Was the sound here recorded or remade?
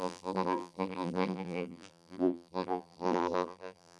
remade